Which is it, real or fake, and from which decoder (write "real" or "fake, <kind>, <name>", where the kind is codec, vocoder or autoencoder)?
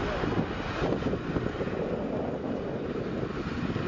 real